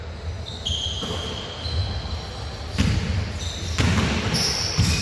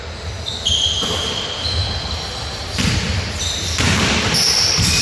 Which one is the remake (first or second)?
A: second